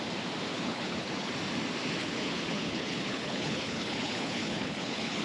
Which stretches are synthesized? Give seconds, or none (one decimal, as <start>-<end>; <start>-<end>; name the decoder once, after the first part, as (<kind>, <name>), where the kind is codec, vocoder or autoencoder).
0.5-1.3 (codec, HILCodec); 2.0-5.2

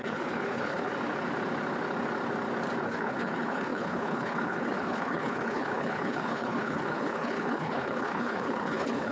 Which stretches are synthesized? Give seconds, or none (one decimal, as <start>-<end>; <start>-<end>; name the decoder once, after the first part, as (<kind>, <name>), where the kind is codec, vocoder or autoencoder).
0.0-0.9 (codec, HILCodec); 2.8-9.1

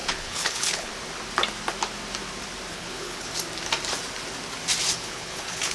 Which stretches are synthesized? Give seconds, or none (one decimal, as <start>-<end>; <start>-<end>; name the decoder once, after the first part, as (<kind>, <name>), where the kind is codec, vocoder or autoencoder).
0.0-0.9 (codec, HILCodec); 2.7-3.3; 4.9-5.7

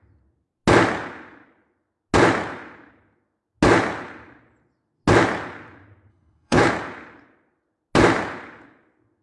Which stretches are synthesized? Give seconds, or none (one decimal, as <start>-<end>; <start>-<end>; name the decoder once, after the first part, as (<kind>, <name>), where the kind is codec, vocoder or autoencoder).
6.1-6.7 (codec, HILCodec)

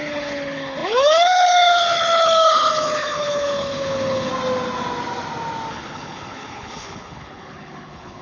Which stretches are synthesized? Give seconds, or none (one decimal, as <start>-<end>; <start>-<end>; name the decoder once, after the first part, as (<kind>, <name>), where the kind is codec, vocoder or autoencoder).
0.0-4.3 (codec, HILCodec); 5.7-8.2

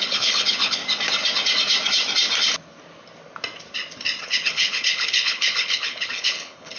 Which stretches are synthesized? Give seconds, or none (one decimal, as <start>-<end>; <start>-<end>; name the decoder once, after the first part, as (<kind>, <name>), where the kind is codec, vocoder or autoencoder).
0.0-0.8 (codec, HILCodec); 4.2-6.8